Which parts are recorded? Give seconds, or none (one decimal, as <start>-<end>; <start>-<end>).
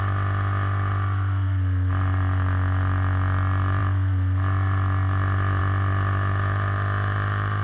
0.0-7.6